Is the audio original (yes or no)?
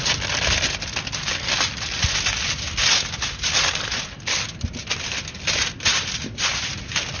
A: yes